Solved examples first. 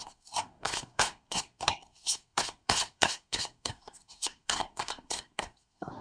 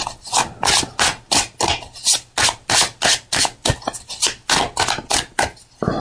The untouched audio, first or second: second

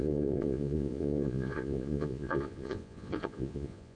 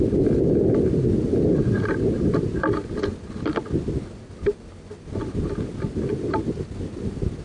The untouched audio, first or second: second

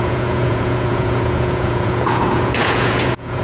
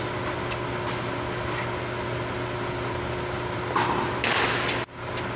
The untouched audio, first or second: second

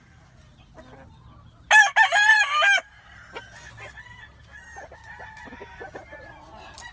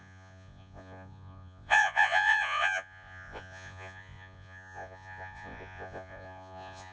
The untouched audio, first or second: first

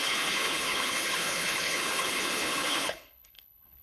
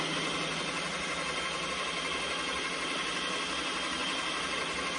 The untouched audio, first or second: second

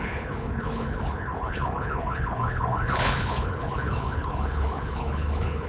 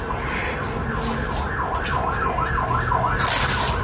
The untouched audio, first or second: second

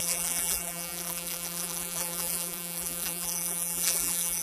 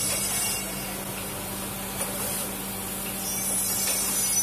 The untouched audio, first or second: second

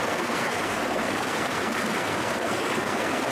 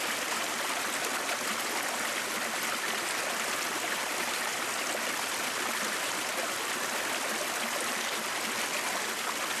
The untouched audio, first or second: second